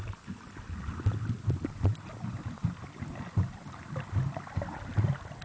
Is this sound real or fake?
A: real